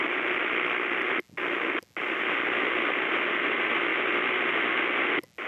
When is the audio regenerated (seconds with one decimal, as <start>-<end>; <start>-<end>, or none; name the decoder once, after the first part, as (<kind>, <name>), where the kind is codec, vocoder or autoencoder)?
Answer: none